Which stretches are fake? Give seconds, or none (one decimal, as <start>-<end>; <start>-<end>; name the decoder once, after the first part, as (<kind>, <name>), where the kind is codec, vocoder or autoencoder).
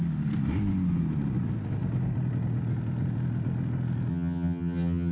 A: 4.1-5.1 (vocoder, HiFi-GAN)